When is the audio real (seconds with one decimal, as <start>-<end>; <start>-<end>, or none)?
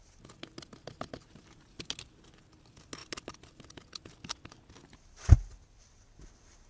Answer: 0.0-6.7